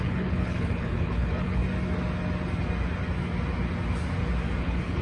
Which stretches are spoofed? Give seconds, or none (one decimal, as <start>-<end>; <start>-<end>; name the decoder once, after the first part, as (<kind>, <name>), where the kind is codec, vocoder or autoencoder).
0.0-1.6 (codec, HILCodec); 4.6-5.0